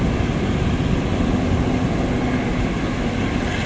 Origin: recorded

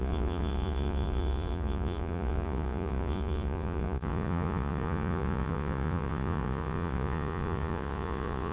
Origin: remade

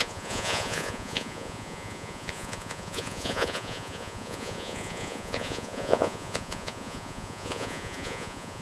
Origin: remade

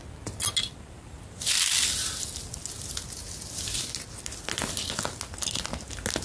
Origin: recorded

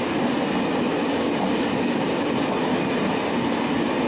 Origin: recorded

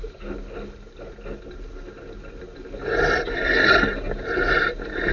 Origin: recorded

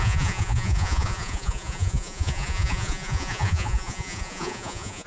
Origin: remade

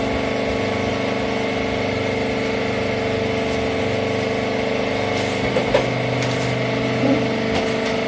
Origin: recorded